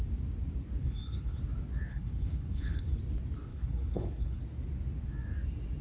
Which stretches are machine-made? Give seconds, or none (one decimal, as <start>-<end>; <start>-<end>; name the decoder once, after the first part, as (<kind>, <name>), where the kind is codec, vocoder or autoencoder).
0.8-1.4 (codec, HILCodec); 1.9-2.9; 3.5-4.4